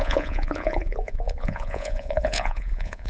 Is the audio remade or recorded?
remade